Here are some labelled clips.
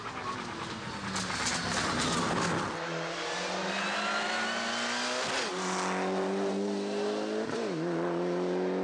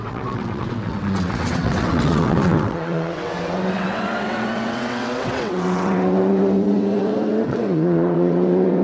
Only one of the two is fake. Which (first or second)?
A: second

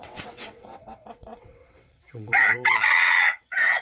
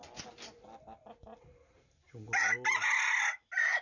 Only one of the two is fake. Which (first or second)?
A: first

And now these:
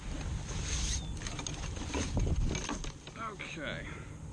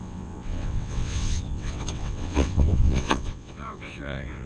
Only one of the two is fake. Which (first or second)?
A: second